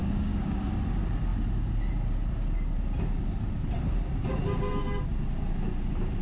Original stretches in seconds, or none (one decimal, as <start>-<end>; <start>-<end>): 0.7-6.2